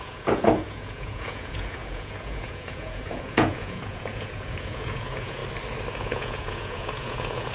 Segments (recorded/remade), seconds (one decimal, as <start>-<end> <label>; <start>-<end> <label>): 0.0-5.4 remade; 5.4-5.9 recorded; 5.9-7.5 remade